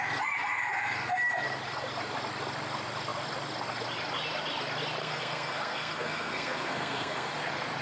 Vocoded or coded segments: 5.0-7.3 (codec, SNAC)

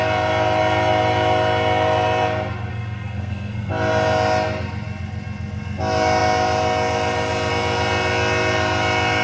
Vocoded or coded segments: 2.7-3.7 (codec, SNAC)

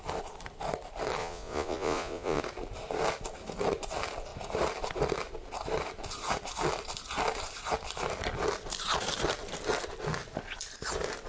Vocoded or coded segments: 1.2-2.4 (vocoder, Vocos)

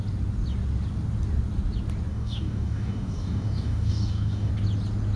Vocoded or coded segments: 2.1-4.5 (codec, DAC)

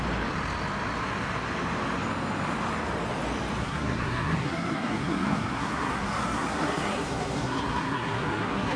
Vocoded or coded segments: 3.6-8.8 (codec, SNAC)

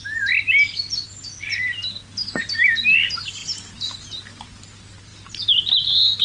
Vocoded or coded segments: none

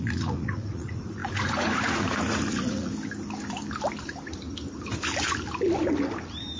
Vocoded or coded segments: 0.0-2.9 (vocoder, Vocos)